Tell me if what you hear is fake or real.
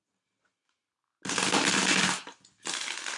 real